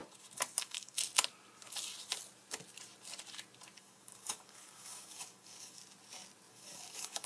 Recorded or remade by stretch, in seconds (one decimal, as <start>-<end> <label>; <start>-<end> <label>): 0.0-0.6 recorded; 0.6-1.0 remade; 1.0-3.8 recorded; 3.8-5.8 remade; 5.8-6.5 recorded; 6.5-7.3 remade